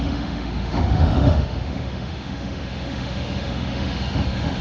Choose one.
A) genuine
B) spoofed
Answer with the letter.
B